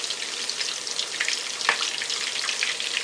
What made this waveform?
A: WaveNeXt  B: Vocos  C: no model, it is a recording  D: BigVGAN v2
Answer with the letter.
C